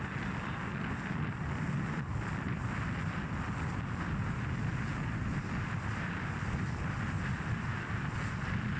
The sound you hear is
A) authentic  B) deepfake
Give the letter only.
A